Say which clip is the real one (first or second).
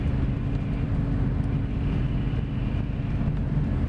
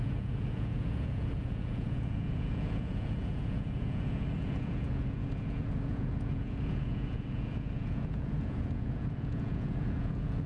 first